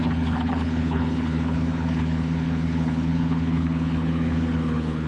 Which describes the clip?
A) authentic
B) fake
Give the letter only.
B